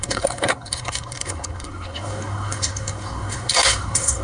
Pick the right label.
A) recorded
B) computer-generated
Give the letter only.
B